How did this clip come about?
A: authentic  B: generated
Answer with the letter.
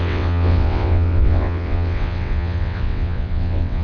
B